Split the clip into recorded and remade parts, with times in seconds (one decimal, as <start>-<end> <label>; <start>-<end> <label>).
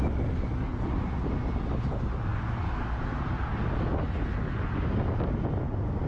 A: 0.0-6.1 recorded